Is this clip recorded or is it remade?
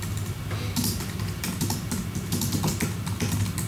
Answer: recorded